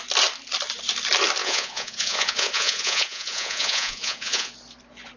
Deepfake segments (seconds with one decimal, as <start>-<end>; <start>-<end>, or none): 1.4-4.5